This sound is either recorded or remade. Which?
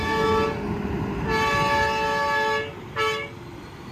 recorded